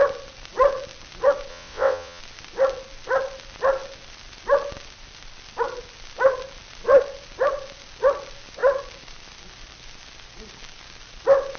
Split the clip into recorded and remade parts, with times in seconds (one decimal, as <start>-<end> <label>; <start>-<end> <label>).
0.0-1.5 recorded; 1.5-2.2 remade; 2.2-11.6 recorded